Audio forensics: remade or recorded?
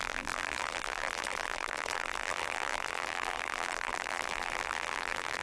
remade